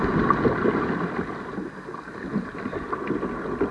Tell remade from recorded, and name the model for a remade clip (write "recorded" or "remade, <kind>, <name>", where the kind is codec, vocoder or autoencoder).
recorded